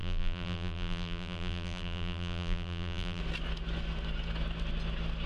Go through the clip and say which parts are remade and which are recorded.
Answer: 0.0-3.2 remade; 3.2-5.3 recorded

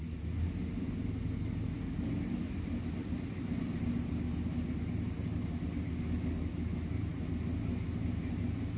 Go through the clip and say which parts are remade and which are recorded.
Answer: 0.0-8.8 recorded

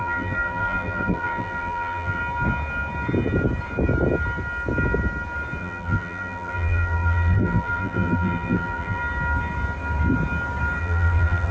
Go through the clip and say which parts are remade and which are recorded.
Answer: 0.0-2.2 remade; 2.2-5.6 recorded; 5.6-9.0 remade; 9.0-10.8 recorded; 10.8-11.5 remade

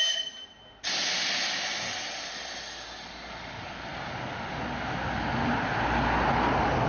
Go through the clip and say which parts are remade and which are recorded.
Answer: 0.0-6.9 recorded

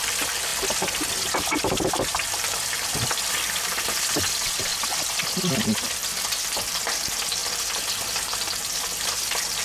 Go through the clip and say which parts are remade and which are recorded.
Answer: 0.0-4.7 remade; 4.7-5.6 recorded; 5.6-6.0 remade; 6.0-6.7 recorded; 6.7-9.6 remade